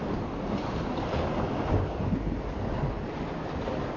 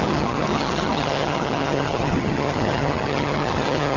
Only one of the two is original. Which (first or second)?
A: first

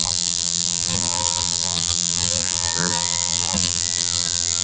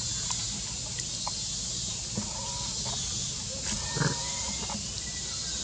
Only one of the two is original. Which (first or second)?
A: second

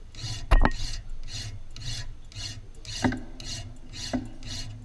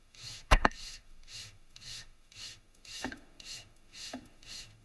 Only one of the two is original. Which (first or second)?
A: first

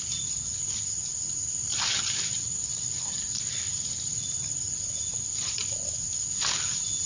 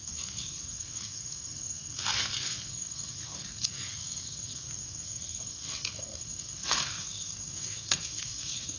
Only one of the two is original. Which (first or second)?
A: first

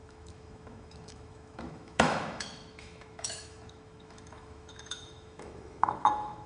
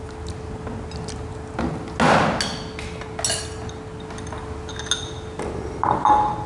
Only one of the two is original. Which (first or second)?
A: second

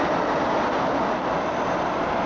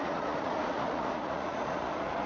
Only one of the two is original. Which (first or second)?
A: first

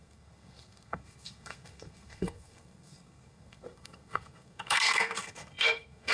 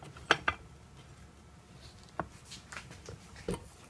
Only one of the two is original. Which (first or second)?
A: second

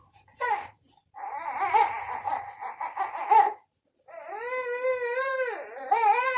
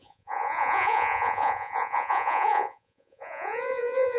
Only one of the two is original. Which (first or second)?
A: first